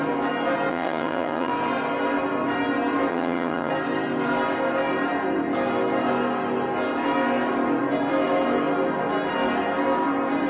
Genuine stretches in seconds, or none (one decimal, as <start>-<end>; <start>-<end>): 0.0-0.7; 1.5-3.1; 3.7-10.5